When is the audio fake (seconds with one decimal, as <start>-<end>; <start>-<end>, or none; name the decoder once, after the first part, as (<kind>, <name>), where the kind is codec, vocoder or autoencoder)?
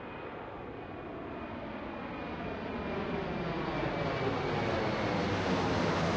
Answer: none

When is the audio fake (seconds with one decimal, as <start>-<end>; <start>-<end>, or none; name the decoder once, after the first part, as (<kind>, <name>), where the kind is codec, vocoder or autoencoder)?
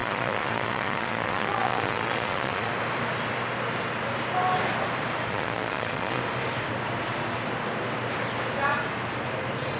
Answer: 0.0-2.7 (vocoder, Vocos); 5.3-6.2